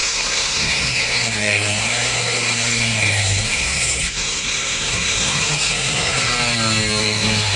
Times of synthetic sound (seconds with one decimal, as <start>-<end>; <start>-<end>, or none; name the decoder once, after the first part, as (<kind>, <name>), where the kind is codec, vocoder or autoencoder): 0.0-6.3 (codec, SNAC); 7.0-7.6